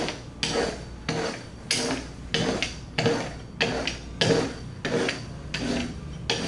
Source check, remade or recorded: recorded